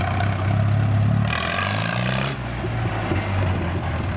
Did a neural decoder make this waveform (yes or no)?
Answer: no